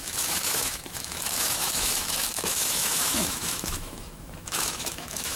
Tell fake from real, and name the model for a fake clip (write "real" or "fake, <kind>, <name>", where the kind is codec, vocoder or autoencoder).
fake, autoencoder, DAC-VAE